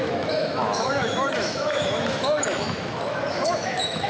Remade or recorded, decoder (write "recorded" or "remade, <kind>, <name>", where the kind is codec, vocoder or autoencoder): remade, autoencoder, DAC-VAE